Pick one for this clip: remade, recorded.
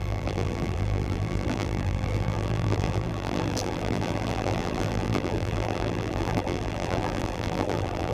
remade